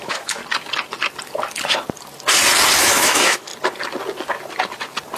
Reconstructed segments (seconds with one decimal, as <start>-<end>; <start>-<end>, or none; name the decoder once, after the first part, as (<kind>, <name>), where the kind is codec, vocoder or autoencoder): 0.0-0.4 (autoencoder, DAC-VAE); 2.8-3.5